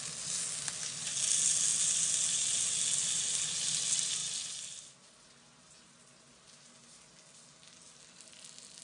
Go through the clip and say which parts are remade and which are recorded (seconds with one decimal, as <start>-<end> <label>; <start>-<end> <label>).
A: 0.0-8.8 recorded